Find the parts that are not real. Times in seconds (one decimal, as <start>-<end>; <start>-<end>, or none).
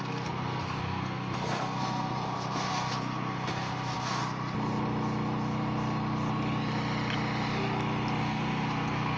0.0-4.2; 8.2-9.2